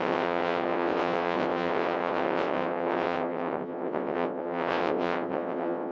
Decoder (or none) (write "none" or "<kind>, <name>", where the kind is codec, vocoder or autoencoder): vocoder, WaveNeXt